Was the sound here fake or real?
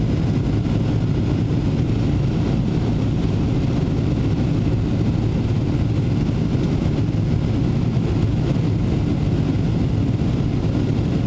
real